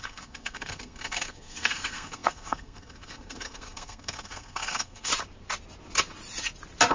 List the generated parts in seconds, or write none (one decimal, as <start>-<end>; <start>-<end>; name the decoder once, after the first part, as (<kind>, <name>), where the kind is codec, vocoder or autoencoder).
0.0-5.1 (codec, SNAC)